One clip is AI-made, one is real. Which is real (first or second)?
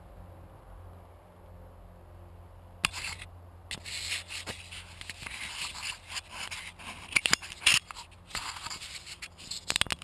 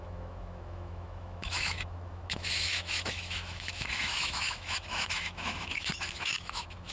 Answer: first